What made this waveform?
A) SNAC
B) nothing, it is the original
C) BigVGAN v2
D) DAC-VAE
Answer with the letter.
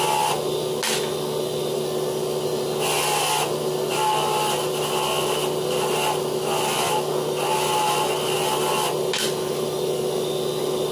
B